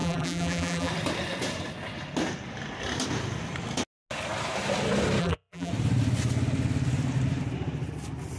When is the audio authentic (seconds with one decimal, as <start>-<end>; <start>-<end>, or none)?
0.9-5.2; 5.7-8.4